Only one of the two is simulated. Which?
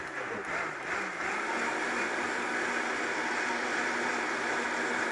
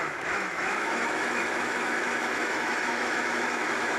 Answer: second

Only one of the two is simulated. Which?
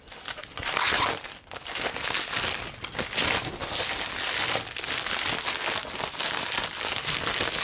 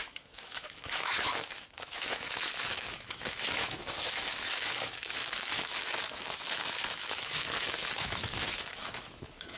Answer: second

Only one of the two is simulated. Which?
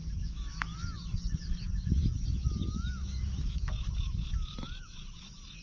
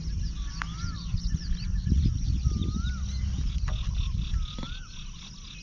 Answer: first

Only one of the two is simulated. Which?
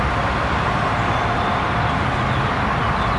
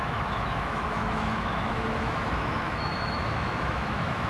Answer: second